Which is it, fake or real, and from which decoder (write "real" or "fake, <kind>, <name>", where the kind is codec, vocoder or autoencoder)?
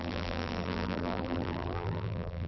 fake, vocoder, BigVGAN v2